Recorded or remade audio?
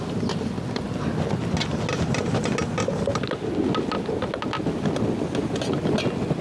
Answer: recorded